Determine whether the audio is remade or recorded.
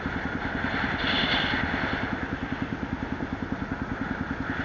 recorded